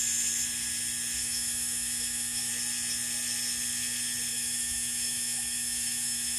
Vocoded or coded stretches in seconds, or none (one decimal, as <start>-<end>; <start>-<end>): 1.2-2.5; 4.3-6.4